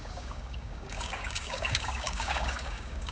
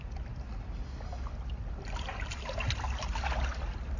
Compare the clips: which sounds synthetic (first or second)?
first